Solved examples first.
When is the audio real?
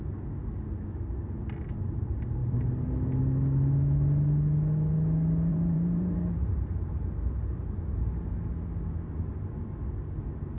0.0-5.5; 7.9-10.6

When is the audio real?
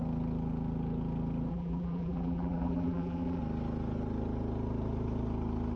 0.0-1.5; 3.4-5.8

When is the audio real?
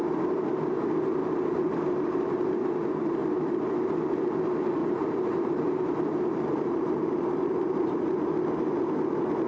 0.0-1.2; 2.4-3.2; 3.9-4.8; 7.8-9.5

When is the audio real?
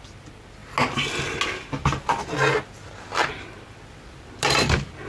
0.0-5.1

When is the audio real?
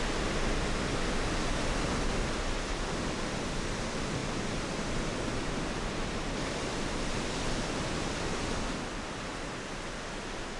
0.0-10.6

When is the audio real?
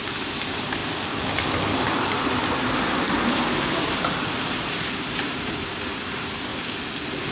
0.8-3.3; 6.5-7.3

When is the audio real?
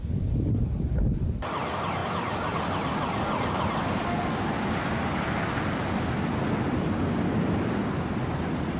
0.0-8.8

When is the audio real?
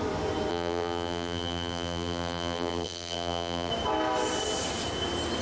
0.0-0.5; 3.7-5.4